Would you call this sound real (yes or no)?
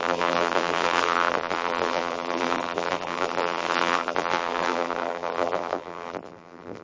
no